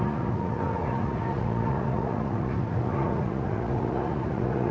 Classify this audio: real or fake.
fake